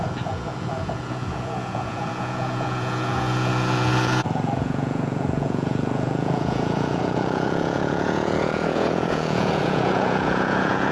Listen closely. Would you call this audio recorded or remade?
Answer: remade